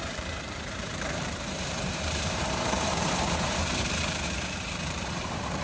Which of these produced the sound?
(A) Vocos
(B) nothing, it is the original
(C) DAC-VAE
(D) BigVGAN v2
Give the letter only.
D